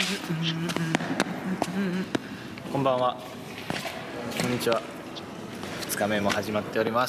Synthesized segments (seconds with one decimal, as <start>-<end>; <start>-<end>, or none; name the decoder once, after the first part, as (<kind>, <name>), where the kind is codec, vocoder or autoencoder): none